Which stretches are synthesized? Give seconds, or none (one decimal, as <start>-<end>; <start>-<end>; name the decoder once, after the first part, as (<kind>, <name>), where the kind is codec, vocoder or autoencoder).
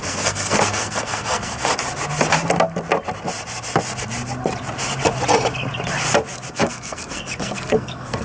0.0-1.7 (codec, SNAC); 6.5-8.2